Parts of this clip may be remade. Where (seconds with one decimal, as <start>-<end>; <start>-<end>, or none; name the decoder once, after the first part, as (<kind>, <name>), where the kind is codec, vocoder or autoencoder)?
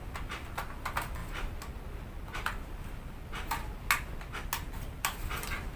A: none